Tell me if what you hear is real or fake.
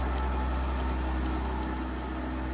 real